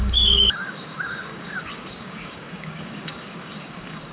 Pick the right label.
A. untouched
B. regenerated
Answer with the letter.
B